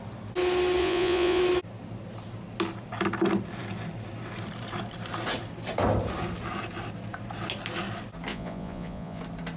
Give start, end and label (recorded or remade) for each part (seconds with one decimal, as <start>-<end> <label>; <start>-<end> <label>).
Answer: 0.0-0.8 recorded; 0.8-1.4 remade; 1.4-8.3 recorded; 8.3-9.2 remade; 9.2-9.6 recorded